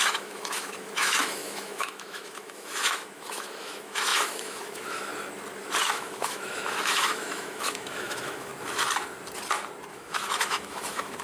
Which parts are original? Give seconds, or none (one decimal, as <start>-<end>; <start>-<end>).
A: 5.1-5.8; 8.5-9.9